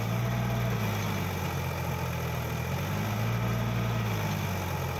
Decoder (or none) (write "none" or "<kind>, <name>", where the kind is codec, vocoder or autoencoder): none